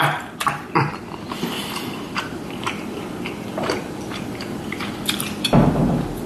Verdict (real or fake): fake